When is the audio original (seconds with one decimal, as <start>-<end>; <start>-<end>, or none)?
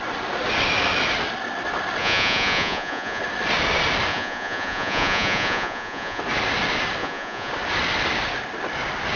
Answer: 0.0-2.0; 3.2-4.1; 6.2-7.0; 7.5-9.2